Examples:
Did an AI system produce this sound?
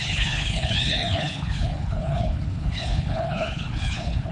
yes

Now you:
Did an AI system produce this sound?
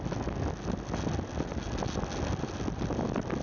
no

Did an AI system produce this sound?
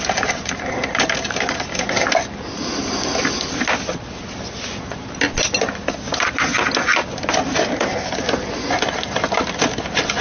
no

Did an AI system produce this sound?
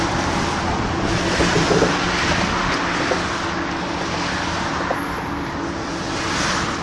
no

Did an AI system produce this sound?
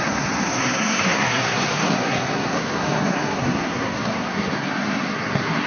yes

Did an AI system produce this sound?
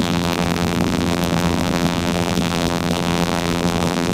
yes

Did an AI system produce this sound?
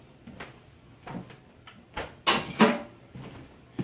no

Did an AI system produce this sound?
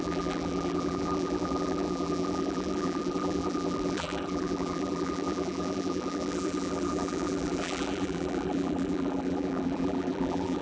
yes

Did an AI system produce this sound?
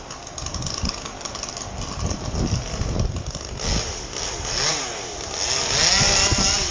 no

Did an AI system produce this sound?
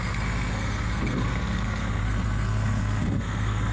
yes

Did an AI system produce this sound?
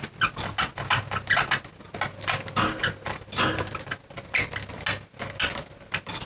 no